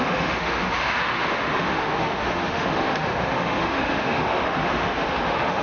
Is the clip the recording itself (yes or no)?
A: no